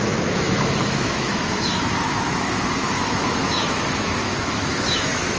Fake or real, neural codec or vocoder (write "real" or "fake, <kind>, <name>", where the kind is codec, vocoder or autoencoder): fake, autoencoder, DAC-VAE